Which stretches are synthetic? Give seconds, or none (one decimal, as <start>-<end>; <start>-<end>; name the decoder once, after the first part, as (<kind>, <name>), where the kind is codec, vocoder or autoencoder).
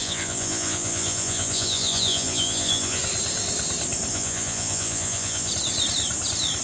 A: 0.0-3.0 (vocoder, Vocos); 4.1-5.5